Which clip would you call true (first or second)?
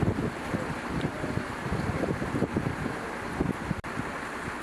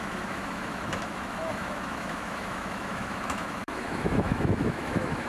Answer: first